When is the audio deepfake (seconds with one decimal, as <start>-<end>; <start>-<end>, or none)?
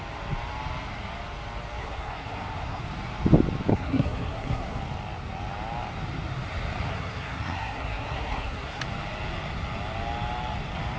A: 1.8-2.8; 3.7-4.8; 6.9-8.8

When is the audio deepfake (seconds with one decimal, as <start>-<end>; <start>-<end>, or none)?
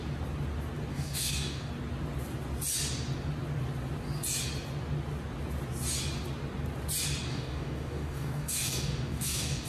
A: 0.9-1.7; 7.3-9.7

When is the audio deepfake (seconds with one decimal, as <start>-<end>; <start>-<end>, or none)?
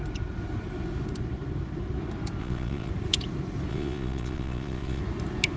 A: 2.4-2.9; 3.7-5.0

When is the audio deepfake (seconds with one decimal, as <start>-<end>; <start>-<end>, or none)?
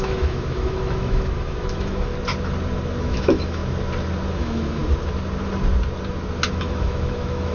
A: 0.0-2.1; 3.0-3.6; 4.3-4.8; 6.5-7.5